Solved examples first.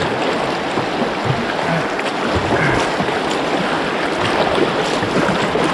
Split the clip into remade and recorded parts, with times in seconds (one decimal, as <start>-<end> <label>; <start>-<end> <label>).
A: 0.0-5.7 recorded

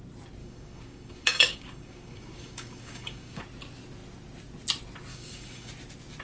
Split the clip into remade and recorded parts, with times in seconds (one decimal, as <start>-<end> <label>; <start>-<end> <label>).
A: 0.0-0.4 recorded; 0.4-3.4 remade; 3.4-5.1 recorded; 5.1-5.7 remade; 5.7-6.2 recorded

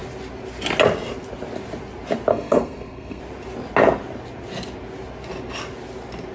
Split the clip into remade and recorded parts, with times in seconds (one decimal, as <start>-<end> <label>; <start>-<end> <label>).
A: 0.0-2.3 recorded; 2.3-3.2 remade; 3.2-6.3 recorded